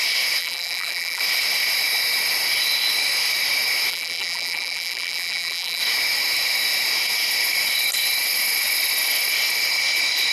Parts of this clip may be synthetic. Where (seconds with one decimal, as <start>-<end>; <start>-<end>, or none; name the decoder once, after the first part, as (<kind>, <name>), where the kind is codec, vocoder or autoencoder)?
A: 0.4-1.2 (vocoder, BigVGAN v2); 3.9-5.8